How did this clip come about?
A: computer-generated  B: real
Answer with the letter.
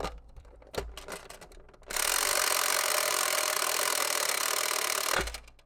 B